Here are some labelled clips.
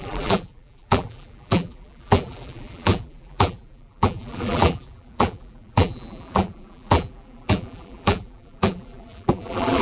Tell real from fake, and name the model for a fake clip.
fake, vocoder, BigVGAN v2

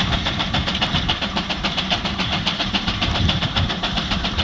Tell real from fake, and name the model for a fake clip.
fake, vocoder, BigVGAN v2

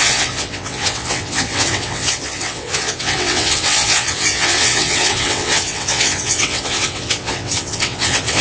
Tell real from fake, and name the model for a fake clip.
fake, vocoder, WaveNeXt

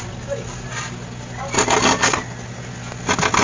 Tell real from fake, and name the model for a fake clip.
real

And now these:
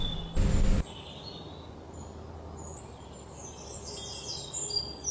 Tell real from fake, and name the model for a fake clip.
real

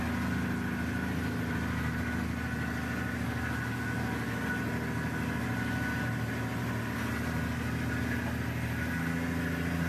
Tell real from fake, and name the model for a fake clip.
real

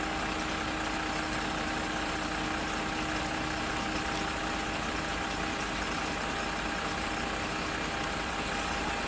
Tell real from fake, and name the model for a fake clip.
real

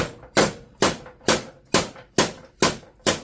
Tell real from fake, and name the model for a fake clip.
fake, vocoder, BigVGAN v2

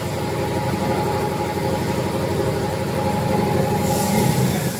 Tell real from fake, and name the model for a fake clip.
real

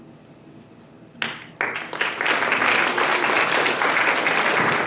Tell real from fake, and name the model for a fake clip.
real